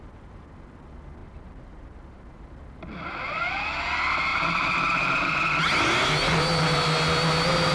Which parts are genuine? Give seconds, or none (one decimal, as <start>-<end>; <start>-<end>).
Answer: 0.0-1.2; 2.5-4.3; 5.4-7.7